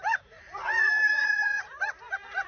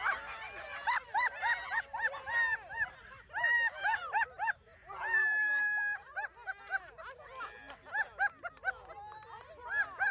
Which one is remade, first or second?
first